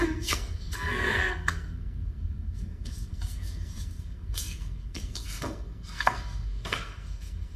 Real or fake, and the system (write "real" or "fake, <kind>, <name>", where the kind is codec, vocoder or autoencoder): fake, codec, SNAC